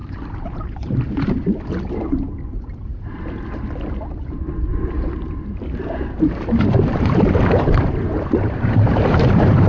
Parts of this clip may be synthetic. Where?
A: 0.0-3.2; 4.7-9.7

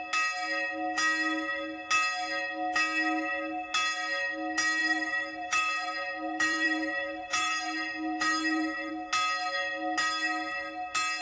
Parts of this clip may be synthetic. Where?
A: 4.8-8.9

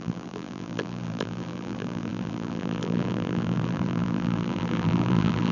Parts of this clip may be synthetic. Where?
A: 0.0-5.5

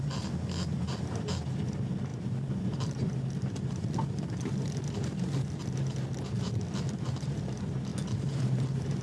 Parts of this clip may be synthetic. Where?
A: 2.1-5.7; 7.9-9.0

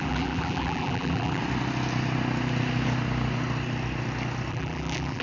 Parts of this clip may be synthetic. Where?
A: 0.0-1.4; 4.5-5.2